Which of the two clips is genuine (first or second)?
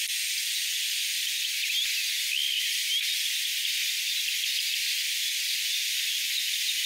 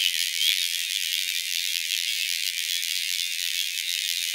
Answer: first